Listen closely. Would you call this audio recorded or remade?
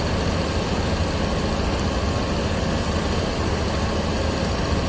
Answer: recorded